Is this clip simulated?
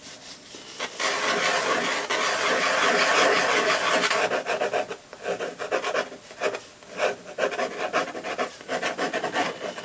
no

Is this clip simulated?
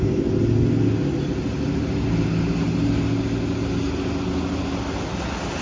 no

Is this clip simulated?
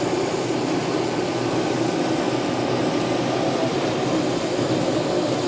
no